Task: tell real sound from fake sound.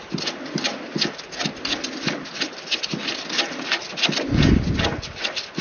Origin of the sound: real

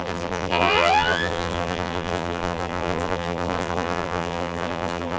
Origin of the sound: fake